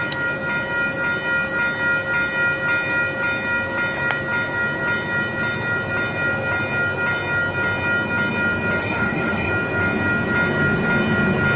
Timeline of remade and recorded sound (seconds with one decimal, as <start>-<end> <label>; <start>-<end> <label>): 0.0-8.8 recorded; 8.8-9.5 remade; 9.5-11.6 recorded